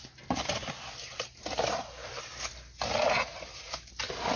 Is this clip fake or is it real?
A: real